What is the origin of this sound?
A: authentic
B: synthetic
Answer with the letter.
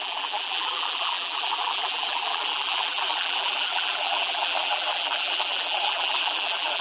B